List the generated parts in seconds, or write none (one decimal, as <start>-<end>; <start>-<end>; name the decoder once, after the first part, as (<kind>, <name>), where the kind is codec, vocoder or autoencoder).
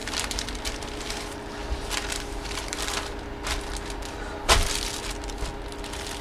0.0-0.8 (vocoder, BigVGAN v2); 1.6-5.3